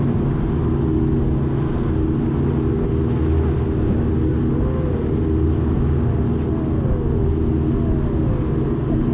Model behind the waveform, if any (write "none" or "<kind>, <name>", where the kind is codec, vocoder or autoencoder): none